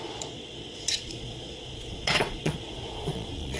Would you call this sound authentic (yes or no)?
no